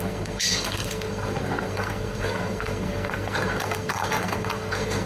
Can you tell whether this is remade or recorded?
remade